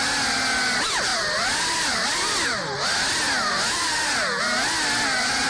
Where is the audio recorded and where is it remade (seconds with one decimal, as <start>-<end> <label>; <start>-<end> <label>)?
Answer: 0.0-5.5 recorded